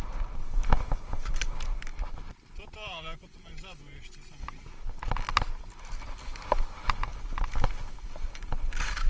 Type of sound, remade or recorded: recorded